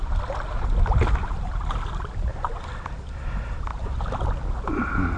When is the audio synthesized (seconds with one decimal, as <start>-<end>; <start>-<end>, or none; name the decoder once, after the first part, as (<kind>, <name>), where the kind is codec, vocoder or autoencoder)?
none